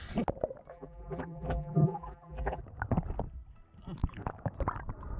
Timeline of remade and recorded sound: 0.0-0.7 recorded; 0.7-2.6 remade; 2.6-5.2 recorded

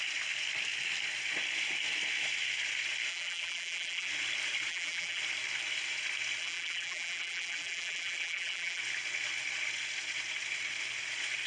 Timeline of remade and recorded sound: 0.0-3.1 recorded; 3.1-4.1 remade; 4.1-4.7 recorded; 4.7-5.2 remade; 5.2-6.4 recorded; 6.4-8.8 remade; 8.8-11.5 recorded

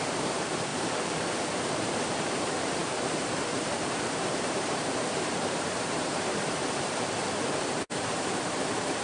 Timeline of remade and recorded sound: 0.0-9.0 remade

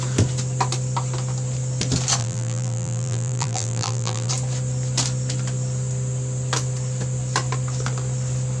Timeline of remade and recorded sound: 0.0-2.2 recorded; 2.2-4.3 remade; 4.3-8.6 recorded

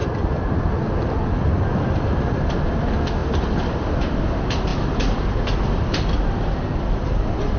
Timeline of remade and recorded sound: 0.0-0.9 remade; 0.9-3.2 recorded; 3.2-4.0 remade; 4.0-4.7 recorded; 4.7-7.6 remade